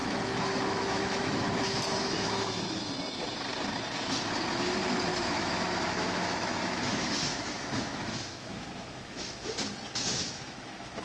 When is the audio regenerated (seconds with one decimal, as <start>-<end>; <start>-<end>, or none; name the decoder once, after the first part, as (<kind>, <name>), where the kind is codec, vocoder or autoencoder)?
0.0-2.9 (autoencoder, DAC-VAE); 5.1-9.5; 10.2-11.0